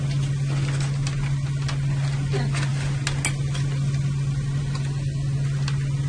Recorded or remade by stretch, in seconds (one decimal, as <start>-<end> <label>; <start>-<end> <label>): 0.0-6.1 recorded